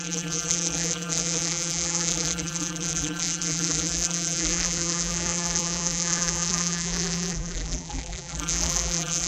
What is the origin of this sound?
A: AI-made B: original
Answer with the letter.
A